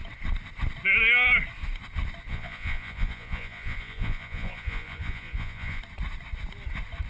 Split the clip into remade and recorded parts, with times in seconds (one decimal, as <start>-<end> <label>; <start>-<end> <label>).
0.0-2.3 recorded; 2.3-5.8 remade; 5.8-7.1 recorded